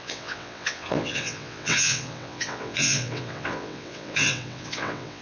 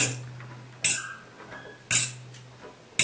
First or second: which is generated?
first